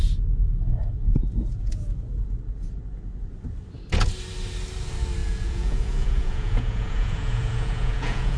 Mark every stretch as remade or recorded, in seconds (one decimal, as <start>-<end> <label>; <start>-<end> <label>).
0.0-0.8 recorded; 0.8-1.8 remade; 1.8-5.2 recorded; 5.2-8.4 remade